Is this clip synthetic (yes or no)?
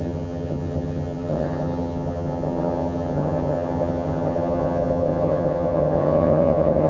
yes